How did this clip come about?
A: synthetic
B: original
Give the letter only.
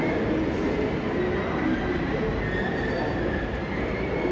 B